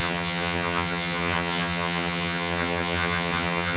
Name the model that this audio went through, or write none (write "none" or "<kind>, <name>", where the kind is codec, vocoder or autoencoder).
vocoder, HiFi-GAN